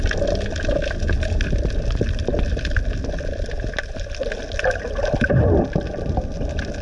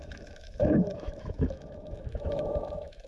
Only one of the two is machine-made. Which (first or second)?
second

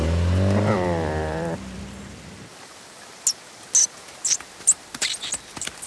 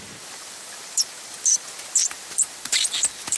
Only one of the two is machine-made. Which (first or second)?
second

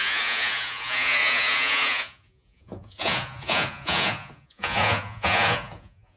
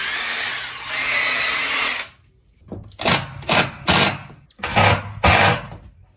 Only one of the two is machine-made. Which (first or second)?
first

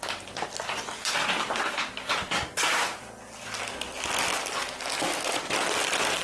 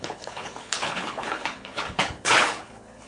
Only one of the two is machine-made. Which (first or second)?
second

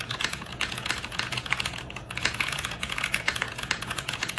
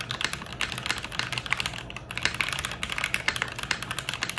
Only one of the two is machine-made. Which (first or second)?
first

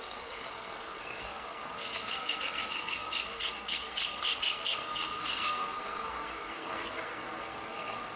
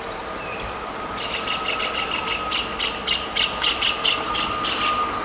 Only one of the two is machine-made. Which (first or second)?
first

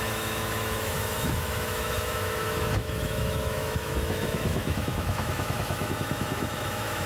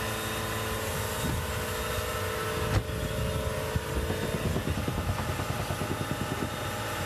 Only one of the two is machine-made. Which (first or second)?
first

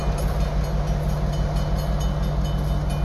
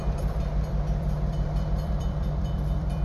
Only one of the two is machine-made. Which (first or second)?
second